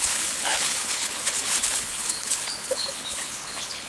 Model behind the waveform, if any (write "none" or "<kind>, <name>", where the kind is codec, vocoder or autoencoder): codec, HILCodec